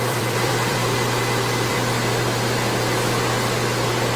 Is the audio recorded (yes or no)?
no